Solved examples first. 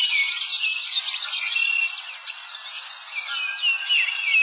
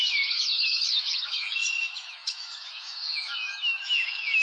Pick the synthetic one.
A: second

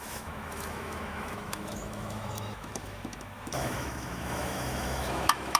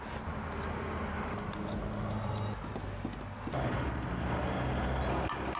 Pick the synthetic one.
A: first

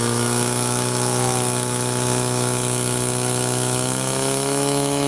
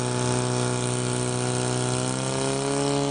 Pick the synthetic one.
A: first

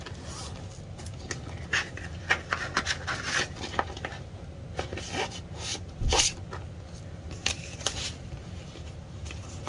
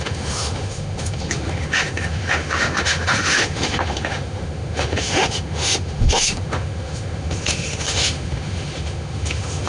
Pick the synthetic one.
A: second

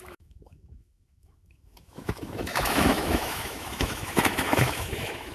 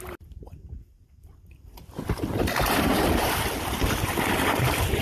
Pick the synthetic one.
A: first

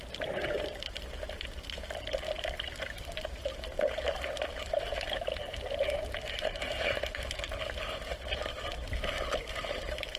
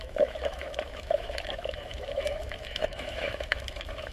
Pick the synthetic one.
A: second